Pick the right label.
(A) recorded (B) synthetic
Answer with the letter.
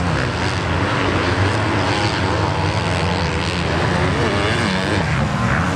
A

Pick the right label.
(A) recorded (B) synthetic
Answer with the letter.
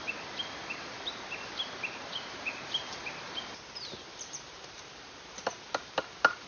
A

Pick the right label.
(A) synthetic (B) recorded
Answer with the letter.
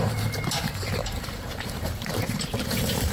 A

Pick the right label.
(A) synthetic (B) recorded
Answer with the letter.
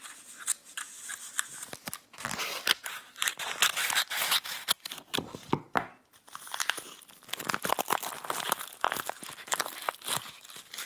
B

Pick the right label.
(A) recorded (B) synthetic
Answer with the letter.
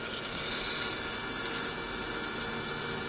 A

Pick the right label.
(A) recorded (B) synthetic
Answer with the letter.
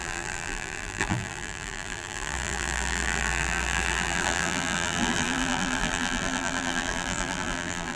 B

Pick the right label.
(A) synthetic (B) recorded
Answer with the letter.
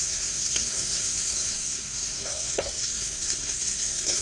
A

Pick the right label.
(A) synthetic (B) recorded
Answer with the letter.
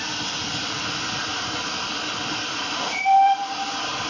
B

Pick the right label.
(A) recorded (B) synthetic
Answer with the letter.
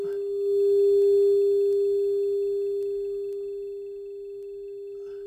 A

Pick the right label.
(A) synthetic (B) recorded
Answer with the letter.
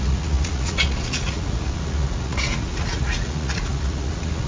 A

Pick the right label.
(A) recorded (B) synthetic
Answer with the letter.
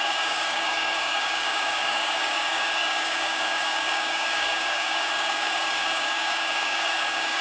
B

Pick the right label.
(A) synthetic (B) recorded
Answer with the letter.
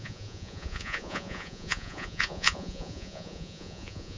A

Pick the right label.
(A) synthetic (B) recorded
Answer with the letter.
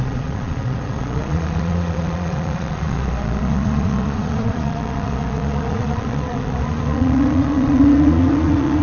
A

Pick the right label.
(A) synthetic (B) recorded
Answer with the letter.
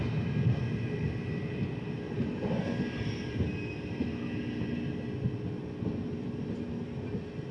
B